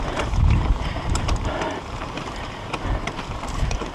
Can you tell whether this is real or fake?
fake